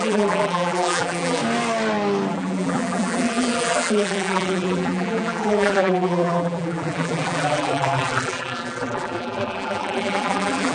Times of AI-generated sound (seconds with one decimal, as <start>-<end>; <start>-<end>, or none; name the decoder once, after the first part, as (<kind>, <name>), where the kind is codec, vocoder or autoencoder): 0.0-1.4 (vocoder, BigVGAN v2); 2.3-10.7